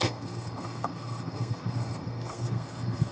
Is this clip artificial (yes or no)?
yes